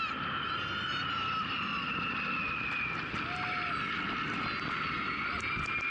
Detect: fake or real real